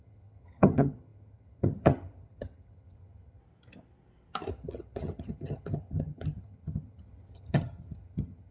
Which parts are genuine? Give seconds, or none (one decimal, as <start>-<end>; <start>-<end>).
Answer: 3.4-4.5